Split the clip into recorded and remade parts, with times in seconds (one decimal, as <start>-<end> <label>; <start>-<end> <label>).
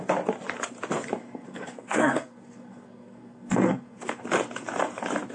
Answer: 0.0-1.2 recorded; 1.2-4.2 remade; 4.2-5.3 recorded